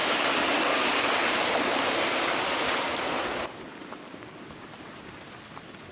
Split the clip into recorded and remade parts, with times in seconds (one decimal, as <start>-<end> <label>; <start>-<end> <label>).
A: 0.0-5.9 recorded